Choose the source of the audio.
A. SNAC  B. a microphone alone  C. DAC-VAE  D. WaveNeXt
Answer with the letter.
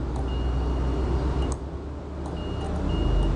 B